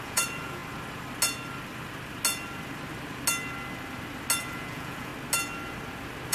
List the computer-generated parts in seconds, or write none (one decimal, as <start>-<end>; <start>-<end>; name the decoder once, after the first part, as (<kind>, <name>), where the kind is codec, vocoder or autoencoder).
0.0-0.6 (vocoder, Vocos); 4.4-5.1